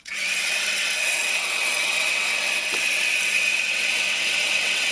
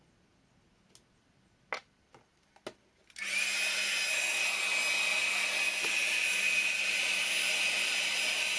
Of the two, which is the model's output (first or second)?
first